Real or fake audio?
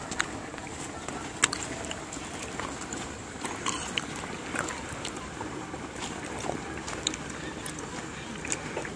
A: real